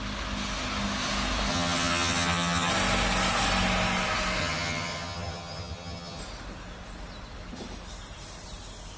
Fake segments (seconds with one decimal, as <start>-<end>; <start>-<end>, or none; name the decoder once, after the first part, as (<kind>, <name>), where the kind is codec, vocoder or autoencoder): 1.5-2.7 (vocoder, HiFi-GAN); 4.4-6.2